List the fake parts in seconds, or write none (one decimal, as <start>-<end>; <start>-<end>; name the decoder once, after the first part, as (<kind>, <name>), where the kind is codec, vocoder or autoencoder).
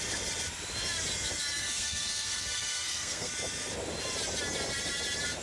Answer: 1.6-3.3 (codec, SNAC)